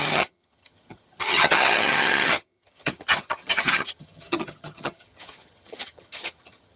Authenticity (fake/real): fake